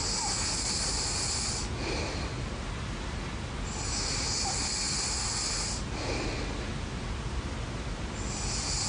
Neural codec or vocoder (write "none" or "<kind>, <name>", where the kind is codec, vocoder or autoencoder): none